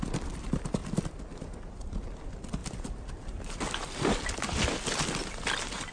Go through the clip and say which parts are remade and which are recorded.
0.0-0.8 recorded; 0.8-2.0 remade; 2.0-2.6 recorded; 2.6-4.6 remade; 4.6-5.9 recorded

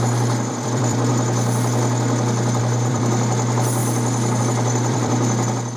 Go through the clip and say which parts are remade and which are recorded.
0.0-1.1 remade; 1.1-2.6 recorded; 2.6-3.8 remade; 3.8-4.4 recorded; 4.4-5.8 remade

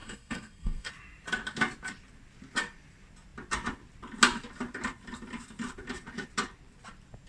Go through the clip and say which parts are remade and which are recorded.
0.0-0.9 remade; 0.9-7.3 recorded